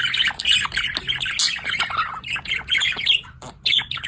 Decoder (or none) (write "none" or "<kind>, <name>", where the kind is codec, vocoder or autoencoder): none